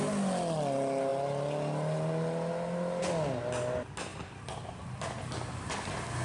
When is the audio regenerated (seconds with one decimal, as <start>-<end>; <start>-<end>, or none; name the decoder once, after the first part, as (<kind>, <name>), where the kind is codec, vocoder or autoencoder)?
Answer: 4.1-5.0 (vocoder, BigVGAN v2)